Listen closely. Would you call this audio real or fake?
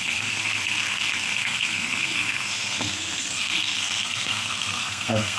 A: fake